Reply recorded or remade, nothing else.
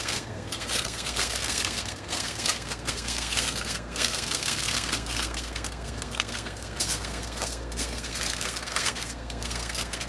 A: remade